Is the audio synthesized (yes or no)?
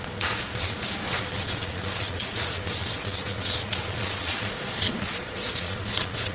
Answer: yes